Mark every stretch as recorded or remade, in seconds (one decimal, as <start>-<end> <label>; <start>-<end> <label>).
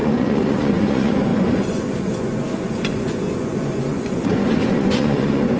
0.0-5.6 remade